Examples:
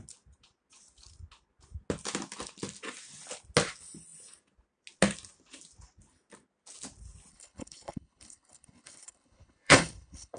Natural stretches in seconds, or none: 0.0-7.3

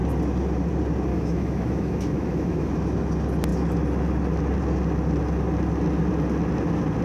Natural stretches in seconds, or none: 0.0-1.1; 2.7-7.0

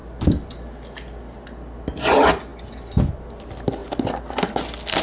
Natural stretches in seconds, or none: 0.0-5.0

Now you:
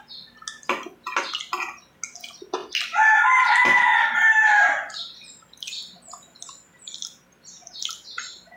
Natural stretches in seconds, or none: 0.0-8.6

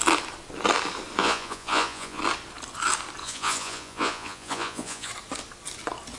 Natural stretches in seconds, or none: 0.0-1.2; 2.2-3.2; 5.1-6.2

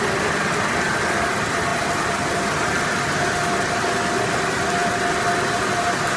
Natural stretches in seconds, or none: 0.0-6.2

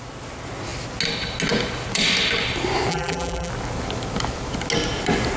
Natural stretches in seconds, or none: 0.0-2.9; 3.5-5.4

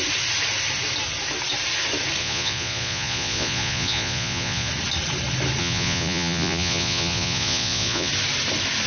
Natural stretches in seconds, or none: 0.0-2.2; 4.7-5.6; 8.1-8.9